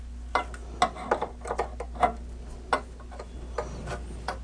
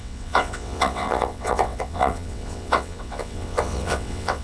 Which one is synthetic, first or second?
second